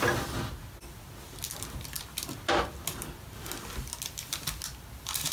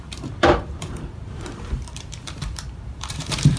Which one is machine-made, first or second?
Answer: second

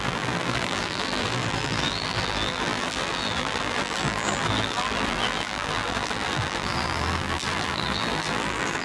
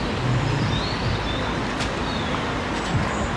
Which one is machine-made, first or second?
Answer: first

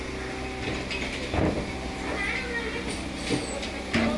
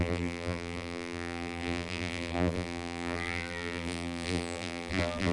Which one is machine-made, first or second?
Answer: second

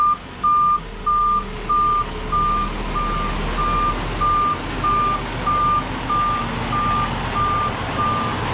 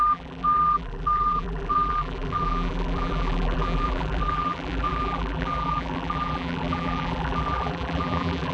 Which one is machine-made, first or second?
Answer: second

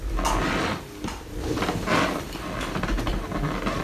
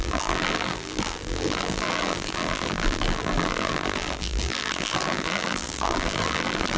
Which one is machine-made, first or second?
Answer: second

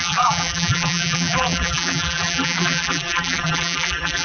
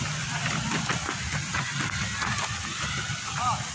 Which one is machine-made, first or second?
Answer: first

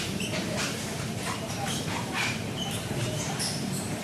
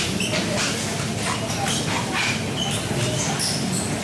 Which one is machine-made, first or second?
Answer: first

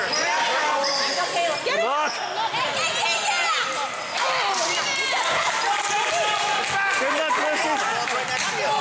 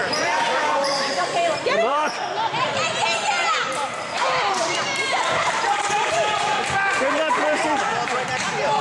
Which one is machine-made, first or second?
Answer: second